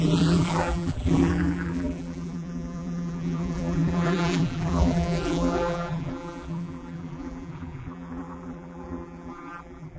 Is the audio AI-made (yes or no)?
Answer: yes